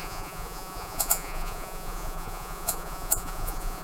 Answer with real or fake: fake